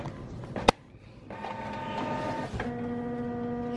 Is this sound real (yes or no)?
yes